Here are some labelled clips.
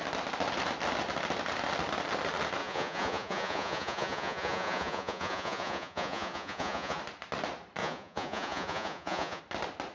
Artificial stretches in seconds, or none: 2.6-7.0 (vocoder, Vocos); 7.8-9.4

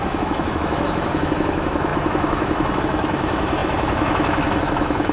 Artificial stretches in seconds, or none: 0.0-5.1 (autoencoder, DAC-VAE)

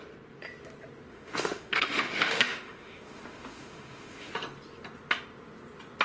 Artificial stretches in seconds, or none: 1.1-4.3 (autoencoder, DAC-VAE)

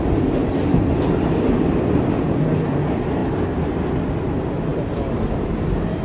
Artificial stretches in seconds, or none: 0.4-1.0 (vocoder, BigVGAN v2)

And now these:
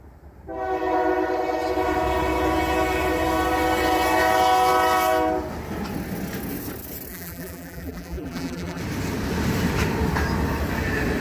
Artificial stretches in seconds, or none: 7.1-8.8 (vocoder, BigVGAN v2)

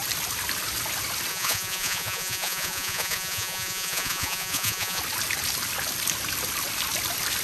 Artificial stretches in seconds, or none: 1.3-5.0 (vocoder, Vocos)